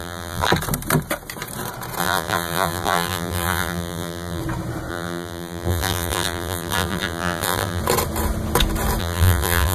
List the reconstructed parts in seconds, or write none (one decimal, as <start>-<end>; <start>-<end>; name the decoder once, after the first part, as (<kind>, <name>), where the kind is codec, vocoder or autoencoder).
0.0-0.5 (vocoder, BigVGAN v2); 2.0-4.4; 4.9-7.8; 9.0-9.7